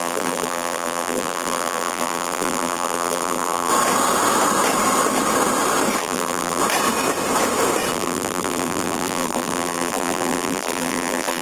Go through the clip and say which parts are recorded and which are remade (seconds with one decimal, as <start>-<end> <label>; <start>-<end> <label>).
0.0-3.7 remade; 3.7-6.0 recorded; 6.0-6.6 remade; 6.6-7.9 recorded; 7.9-11.4 remade